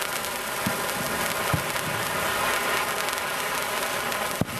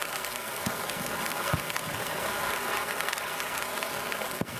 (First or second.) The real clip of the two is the first